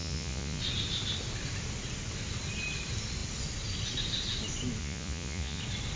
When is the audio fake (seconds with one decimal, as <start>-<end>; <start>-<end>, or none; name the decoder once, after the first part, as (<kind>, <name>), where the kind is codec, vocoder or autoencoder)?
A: 0.0-0.6 (vocoder, Vocos); 4.8-5.6